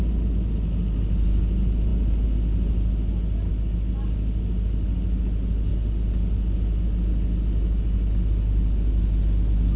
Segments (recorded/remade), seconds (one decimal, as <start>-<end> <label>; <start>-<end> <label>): 0.0-9.8 recorded